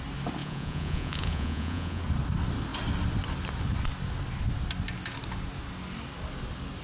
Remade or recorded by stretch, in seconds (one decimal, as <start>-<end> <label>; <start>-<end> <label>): 0.0-0.4 recorded; 0.4-2.0 remade; 2.0-6.8 recorded